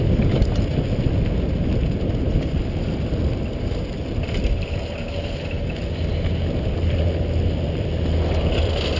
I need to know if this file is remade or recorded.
recorded